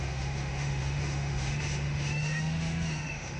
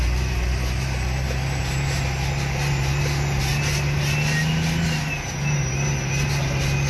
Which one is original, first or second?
second